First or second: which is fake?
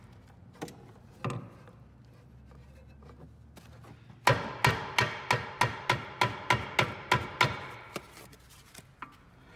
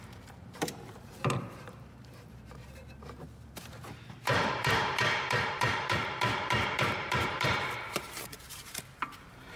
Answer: second